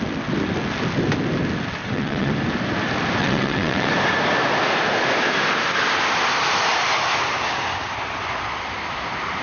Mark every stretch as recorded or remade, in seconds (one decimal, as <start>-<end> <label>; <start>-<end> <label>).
0.0-1.8 recorded; 1.8-2.3 remade; 2.3-3.2 recorded; 3.2-3.9 remade; 3.9-9.4 recorded